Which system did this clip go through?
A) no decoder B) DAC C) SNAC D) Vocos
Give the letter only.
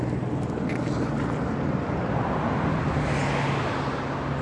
A